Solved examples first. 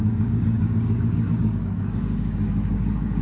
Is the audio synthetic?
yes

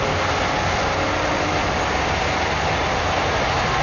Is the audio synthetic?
no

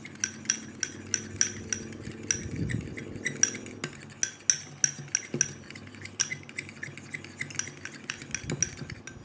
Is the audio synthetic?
no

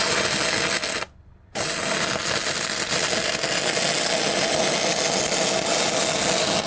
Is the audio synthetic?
no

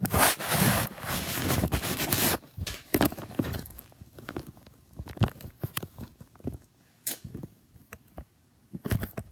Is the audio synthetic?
yes